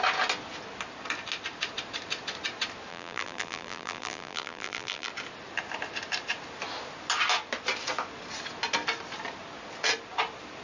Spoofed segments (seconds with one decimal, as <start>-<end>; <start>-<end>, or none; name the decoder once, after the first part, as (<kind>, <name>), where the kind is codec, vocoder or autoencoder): 2.9-5.1 (vocoder, BigVGAN v2)